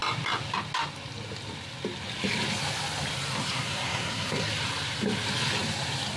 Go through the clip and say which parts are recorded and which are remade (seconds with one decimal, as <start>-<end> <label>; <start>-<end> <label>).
0.0-3.4 recorded; 3.4-4.5 remade; 4.5-6.2 recorded